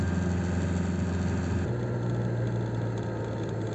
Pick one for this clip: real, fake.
real